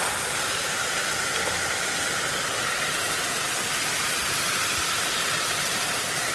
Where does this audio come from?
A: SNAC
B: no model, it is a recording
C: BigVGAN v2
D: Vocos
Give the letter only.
B